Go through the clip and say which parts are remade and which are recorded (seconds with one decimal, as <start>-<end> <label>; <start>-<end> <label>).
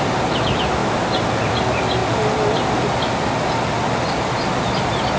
0.0-5.2 recorded